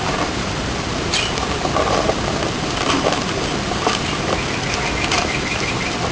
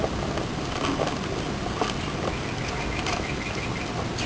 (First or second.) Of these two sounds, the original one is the second